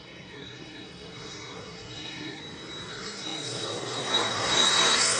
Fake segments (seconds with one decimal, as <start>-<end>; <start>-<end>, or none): 0.0-2.4; 2.9-5.2

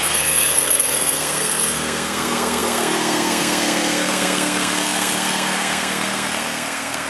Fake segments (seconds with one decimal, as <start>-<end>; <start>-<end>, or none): 0.0-7.1

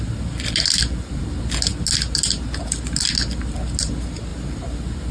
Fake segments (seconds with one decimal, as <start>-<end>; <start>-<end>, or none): none

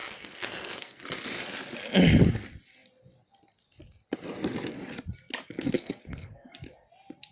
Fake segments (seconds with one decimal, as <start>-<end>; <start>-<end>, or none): 0.0-1.0; 5.8-6.5

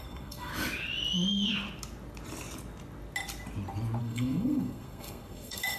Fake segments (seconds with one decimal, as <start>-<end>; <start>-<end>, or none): 0.0-0.5; 4.0-5.8

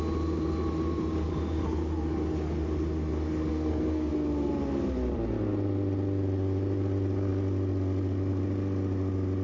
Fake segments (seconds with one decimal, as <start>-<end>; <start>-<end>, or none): 3.5-4.1